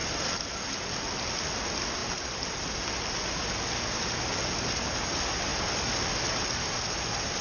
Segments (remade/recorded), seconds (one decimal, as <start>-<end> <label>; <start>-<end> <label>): 0.0-0.9 remade; 0.9-5.5 recorded; 5.5-6.3 remade; 6.3-7.4 recorded